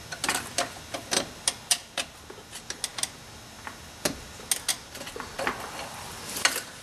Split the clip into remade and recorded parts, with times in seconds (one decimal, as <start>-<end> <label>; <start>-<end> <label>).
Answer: 0.0-6.8 recorded